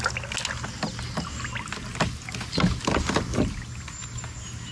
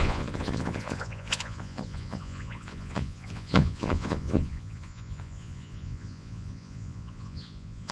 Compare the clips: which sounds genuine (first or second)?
first